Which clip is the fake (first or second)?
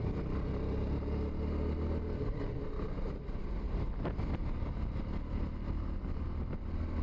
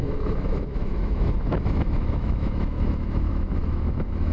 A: second